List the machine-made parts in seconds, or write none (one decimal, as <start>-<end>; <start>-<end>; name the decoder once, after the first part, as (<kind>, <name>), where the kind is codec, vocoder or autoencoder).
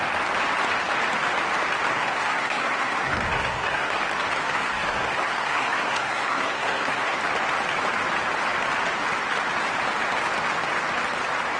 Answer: 1.9-4.0 (codec, SNAC); 4.6-7.2